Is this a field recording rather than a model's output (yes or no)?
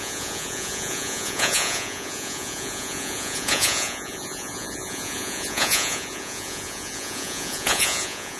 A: no